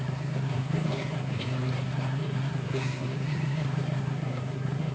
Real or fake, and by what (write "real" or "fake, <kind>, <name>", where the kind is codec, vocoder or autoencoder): fake, codec, SNAC